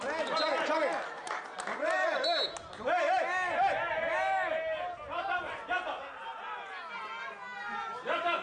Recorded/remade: recorded